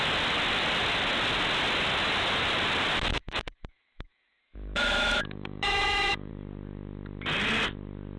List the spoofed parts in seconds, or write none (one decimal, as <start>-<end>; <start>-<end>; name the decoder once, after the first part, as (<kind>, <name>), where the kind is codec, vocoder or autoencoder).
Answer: 3.1-6.3 (autoencoder, DAC-VAE)